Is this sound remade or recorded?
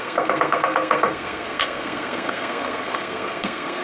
remade